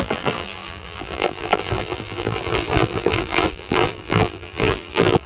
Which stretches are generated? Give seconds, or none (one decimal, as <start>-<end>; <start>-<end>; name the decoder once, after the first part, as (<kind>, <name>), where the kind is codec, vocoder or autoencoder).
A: 0.0-5.3 (vocoder, BigVGAN v2)